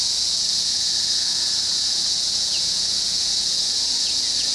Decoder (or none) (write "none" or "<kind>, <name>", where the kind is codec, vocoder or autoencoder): vocoder, Vocos